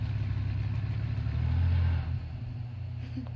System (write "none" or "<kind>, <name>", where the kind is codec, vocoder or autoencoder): none